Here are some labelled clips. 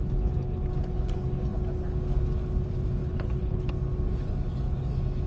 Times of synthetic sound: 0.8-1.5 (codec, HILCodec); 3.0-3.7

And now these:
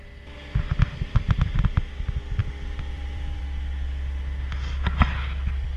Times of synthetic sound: 0.7-1.5 (vocoder, BigVGAN v2); 2.4-3.4

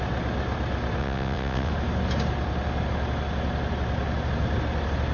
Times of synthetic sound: 1.0-1.7 (vocoder, WaveNeXt)

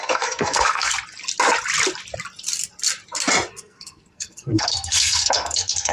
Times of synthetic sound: 0.0-0.9 (codec, SNAC); 3.6-5.9